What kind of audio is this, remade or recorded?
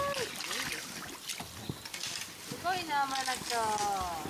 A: recorded